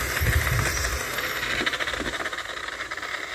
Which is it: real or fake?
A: real